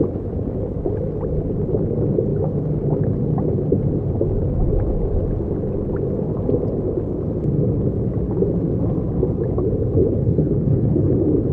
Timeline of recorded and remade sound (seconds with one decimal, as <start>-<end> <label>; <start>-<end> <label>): 0.0-10.0 recorded; 10.0-11.1 remade; 11.1-11.5 recorded